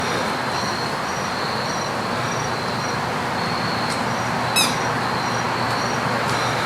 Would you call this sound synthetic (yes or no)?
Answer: no